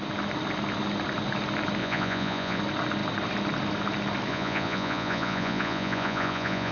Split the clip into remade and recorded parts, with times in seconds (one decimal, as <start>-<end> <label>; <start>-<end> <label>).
0.0-1.8 recorded; 1.8-2.6 remade; 2.6-4.3 recorded; 4.3-6.7 remade